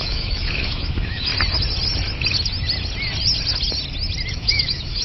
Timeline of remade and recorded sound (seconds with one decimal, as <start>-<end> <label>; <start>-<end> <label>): 0.0-1.3 remade; 1.3-4.3 recorded; 4.3-5.0 remade